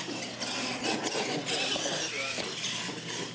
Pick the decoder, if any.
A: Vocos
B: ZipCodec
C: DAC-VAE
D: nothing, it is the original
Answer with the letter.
D